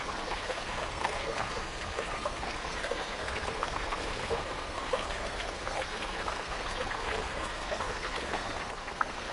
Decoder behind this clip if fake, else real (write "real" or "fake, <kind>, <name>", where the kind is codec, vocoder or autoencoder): fake, codec, SNAC